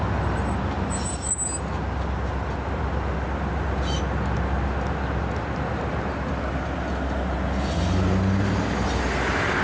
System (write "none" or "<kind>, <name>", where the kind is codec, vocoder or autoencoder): none